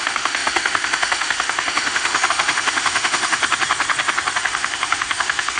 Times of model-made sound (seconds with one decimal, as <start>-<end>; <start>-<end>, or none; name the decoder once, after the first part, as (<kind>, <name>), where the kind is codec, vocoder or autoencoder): 0.0-3.4 (autoencoder, DAC-VAE); 4.4-5.6